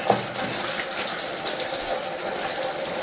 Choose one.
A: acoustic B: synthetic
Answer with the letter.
B